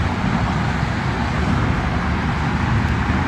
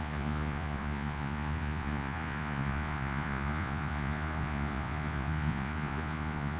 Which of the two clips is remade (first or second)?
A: second